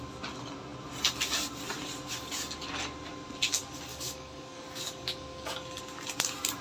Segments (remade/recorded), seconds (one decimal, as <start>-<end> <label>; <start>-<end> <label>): 0.0-3.9 recorded; 3.9-5.8 remade; 5.8-6.6 recorded